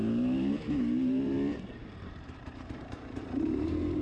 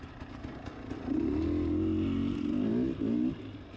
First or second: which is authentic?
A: second